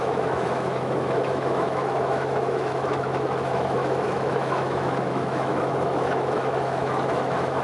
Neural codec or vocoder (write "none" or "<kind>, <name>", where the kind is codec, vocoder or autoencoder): autoencoder, DAC-VAE